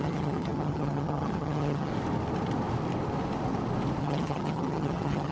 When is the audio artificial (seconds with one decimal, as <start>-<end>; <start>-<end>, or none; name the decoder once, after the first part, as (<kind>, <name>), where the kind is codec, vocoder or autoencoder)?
0.0-1.9 (vocoder, HiFi-GAN); 4.0-5.3